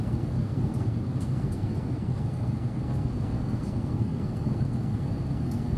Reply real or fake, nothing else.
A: fake